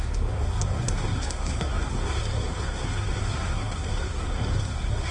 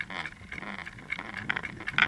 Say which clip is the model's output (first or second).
first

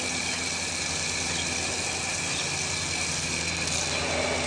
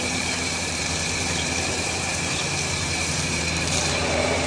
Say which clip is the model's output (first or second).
second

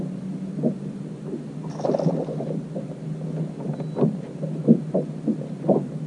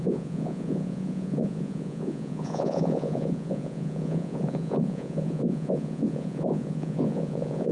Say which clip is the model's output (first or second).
second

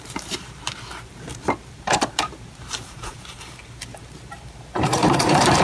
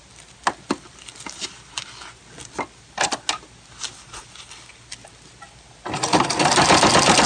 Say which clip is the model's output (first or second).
first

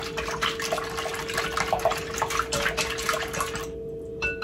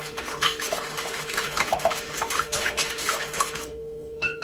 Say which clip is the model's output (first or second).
second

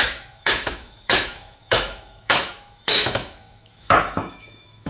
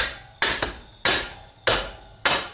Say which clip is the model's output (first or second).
first